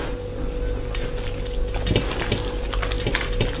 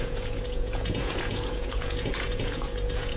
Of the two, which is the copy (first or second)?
second